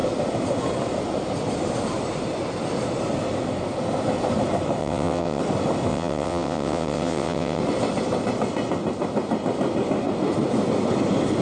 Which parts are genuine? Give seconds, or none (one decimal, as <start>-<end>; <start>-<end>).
0.0-4.8; 5.4-5.9; 7.6-11.4